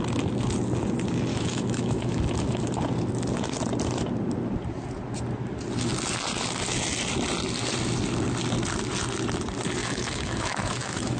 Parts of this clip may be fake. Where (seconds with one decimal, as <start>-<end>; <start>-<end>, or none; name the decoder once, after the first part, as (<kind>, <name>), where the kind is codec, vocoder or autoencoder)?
1.3-2.6 (autoencoder, DAC-VAE); 9.8-11.2